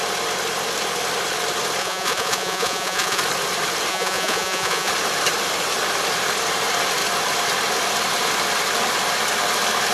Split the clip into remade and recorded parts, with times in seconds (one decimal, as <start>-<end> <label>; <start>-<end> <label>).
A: 0.0-1.8 recorded; 1.8-3.2 remade; 3.2-3.9 recorded; 3.9-4.9 remade; 4.9-9.9 recorded